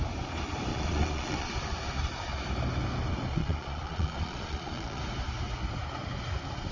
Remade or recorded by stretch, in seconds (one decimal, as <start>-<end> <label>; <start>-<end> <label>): 0.0-0.7 recorded; 0.7-1.5 remade; 1.5-3.4 recorded; 3.4-5.0 remade; 5.0-6.7 recorded